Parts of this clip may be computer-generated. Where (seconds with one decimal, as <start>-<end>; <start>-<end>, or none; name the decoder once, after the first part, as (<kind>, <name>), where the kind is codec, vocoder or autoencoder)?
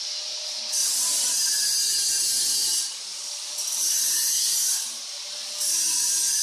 none